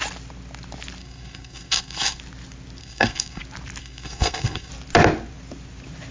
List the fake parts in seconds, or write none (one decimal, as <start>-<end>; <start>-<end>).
1.0-2.2; 2.8-3.4; 3.8-4.7